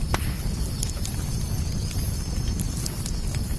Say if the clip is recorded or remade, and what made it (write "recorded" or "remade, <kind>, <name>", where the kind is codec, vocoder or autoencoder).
recorded